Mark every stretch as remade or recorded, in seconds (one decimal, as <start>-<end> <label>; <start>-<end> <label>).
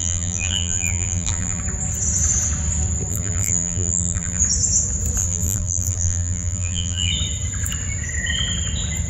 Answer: 0.0-1.6 remade; 1.6-3.1 recorded; 3.1-4.4 remade; 4.4-5.2 recorded; 5.2-7.1 remade; 7.1-9.1 recorded